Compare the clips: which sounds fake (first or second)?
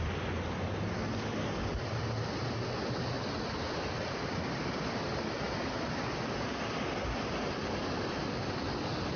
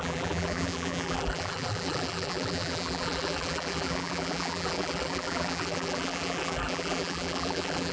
second